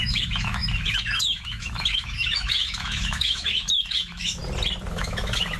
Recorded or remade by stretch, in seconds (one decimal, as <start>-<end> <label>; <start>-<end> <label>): 0.0-4.4 remade; 4.4-4.9 recorded; 4.9-5.6 remade